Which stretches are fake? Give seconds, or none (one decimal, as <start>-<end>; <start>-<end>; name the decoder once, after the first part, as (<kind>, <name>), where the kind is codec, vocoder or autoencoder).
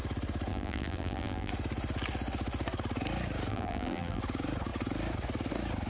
0.5-1.5 (vocoder, BigVGAN v2); 3.5-4.2